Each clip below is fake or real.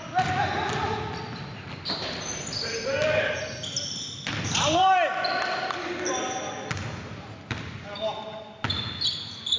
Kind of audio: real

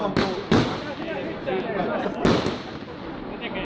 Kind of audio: real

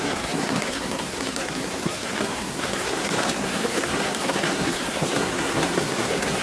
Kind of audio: fake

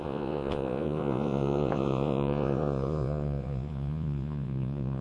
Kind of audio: fake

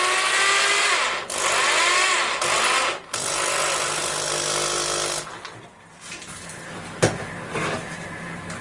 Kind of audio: real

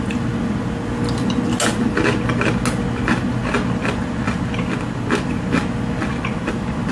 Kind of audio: real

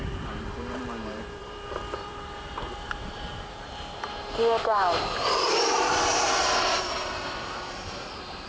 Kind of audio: fake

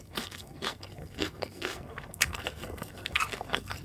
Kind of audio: fake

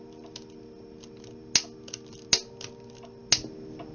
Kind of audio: real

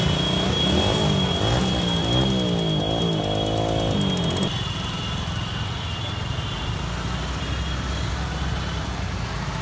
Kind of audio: real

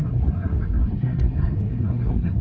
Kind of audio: fake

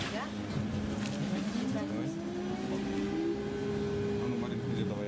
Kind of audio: real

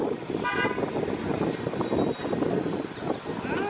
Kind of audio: real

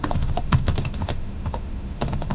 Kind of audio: fake